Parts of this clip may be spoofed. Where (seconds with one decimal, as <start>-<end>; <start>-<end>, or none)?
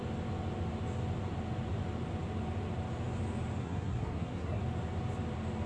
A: 3.6-4.6